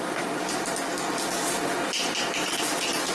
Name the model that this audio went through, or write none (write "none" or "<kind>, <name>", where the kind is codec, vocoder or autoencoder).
none